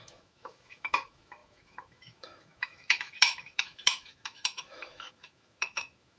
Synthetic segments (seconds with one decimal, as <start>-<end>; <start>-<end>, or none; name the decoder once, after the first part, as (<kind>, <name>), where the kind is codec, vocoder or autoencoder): 0.0-6.2 (autoencoder, DAC-VAE)